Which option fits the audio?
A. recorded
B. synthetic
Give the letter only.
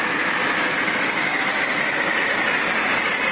A